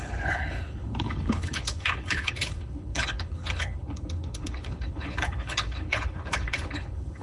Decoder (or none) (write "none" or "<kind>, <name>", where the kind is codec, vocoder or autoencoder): codec, HILCodec